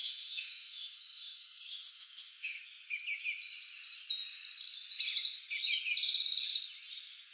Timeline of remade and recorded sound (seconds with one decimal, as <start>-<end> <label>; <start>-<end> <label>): 0.0-2.6 remade; 2.6-7.3 recorded